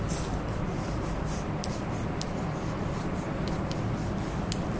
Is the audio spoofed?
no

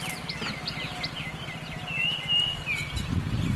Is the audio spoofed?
no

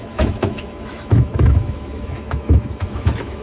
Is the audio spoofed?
yes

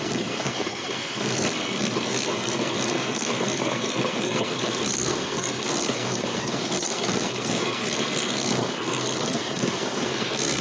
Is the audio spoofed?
yes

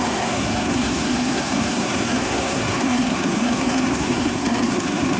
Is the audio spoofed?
yes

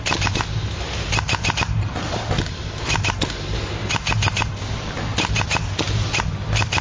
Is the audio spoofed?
no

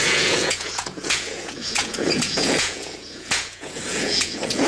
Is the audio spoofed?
yes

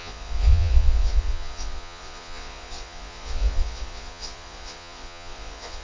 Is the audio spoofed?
yes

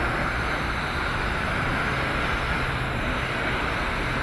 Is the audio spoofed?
no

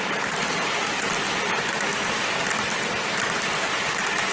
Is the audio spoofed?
no